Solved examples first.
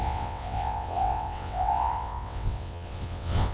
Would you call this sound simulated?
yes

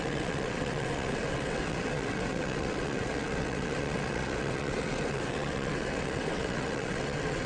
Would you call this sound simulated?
yes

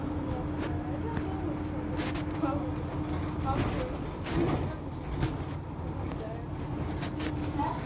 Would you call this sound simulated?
no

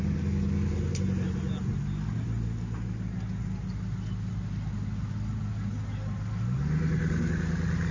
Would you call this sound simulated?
no